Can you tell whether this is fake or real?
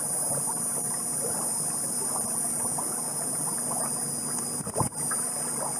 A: real